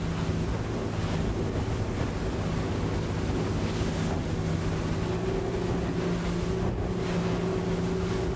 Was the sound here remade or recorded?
recorded